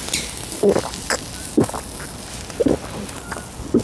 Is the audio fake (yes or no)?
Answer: no